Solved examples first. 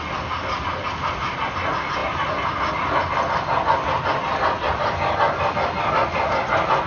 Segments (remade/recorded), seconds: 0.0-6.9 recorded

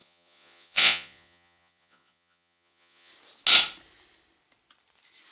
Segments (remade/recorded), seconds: 0.0-3.1 remade; 3.1-5.3 recorded

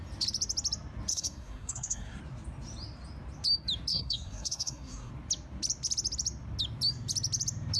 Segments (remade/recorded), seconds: 0.0-1.1 recorded; 1.1-2.2 remade; 2.2-3.9 recorded; 3.9-5.1 remade; 5.1-7.8 recorded

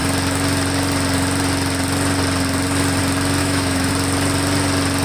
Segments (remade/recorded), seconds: 0.0-3.4 recorded; 3.4-3.9 remade; 3.9-5.0 recorded

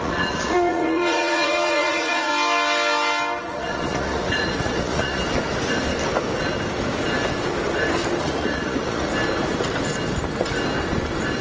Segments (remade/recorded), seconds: 0.0-2.3 remade; 2.3-3.4 recorded; 3.4-5.2 remade; 5.2-8.2 recorded; 8.2-9.1 remade; 9.1-11.4 recorded

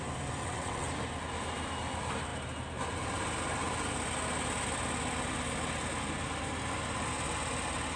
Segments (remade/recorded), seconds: 0.0-0.4 recorded; 0.4-0.9 remade; 0.9-8.0 recorded